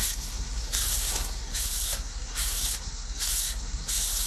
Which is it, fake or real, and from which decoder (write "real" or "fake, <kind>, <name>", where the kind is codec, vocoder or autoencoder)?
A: fake, codec, SNAC